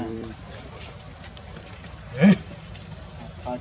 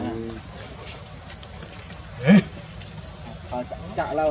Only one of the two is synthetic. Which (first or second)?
first